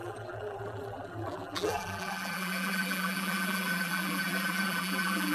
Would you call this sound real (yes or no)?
no